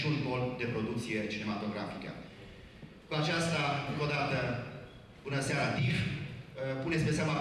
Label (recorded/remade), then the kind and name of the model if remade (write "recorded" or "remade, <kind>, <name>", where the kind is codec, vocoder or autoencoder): recorded